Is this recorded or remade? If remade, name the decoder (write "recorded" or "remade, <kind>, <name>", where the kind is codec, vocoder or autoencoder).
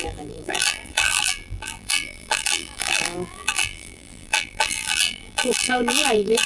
remade, vocoder, BigVGAN v2